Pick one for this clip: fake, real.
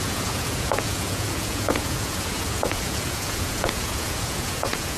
fake